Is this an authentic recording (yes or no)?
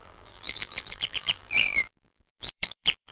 no